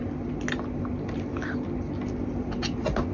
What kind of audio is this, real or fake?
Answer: real